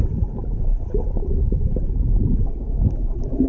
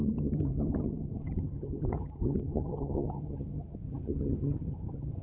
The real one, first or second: first